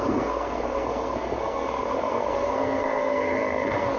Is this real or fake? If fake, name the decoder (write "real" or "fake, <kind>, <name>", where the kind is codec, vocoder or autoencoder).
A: fake, codec, SNAC